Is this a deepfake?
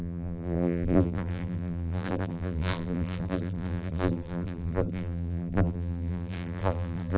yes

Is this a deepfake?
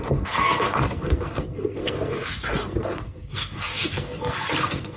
yes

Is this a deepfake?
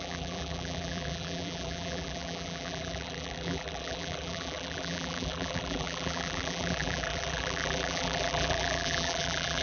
yes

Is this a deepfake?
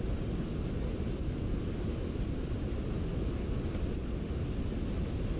no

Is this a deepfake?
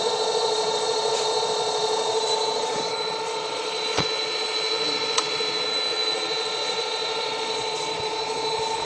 yes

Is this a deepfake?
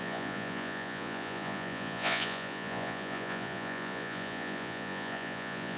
yes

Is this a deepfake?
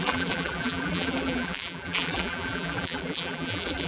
yes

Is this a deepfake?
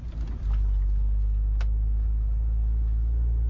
no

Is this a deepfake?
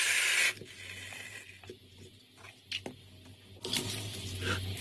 no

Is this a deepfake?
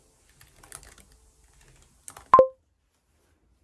no